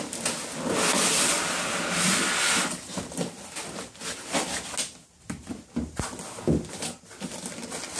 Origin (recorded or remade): recorded